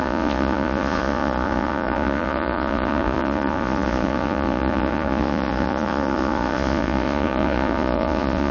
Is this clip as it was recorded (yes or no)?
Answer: no